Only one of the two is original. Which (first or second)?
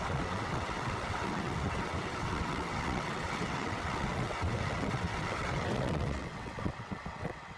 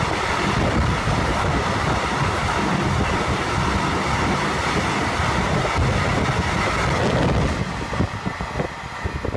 second